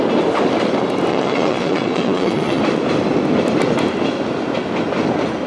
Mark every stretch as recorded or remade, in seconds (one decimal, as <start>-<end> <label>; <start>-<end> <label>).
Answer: 0.0-1.1 recorded; 1.1-2.6 remade; 2.6-5.5 recorded